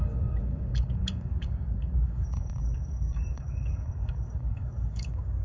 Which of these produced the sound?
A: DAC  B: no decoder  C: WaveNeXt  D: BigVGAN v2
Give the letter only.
A